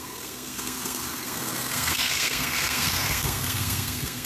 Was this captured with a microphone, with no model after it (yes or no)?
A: no